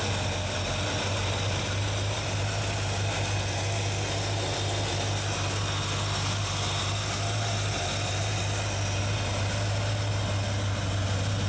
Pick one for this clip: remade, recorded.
recorded